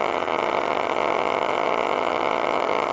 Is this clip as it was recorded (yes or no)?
no